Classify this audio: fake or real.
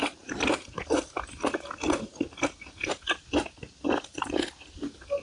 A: real